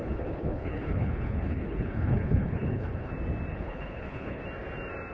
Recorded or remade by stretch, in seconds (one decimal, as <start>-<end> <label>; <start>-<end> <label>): 0.0-3.1 remade; 3.1-3.5 recorded; 3.5-4.4 remade; 4.4-5.1 recorded